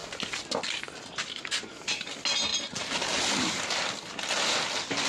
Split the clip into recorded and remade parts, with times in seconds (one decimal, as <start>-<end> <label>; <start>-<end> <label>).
0.0-5.1 recorded